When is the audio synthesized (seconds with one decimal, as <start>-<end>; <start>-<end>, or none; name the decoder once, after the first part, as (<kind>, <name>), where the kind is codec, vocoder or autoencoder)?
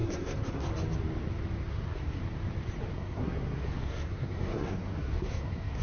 0.0-0.7 (codec, SNAC); 1.7-2.2; 2.9-5.8